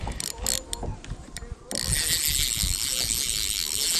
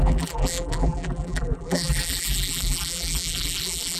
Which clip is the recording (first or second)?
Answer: first